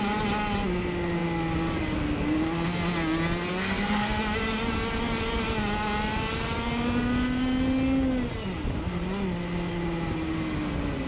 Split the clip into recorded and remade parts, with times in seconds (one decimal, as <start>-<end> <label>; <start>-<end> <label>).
0.0-3.6 recorded; 3.6-4.2 remade; 4.2-11.1 recorded